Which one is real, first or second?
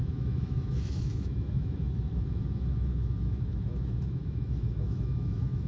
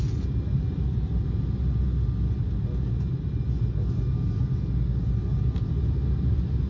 second